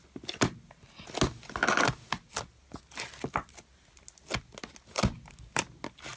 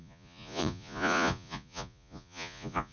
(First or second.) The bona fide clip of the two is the first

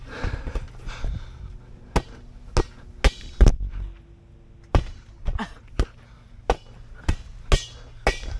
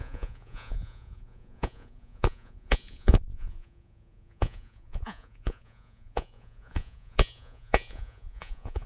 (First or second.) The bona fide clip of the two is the first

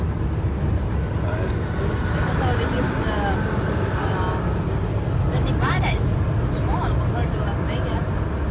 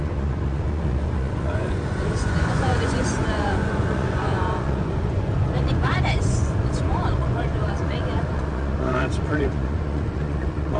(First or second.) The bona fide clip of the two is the first